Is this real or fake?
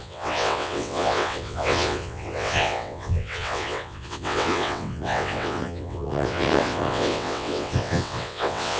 fake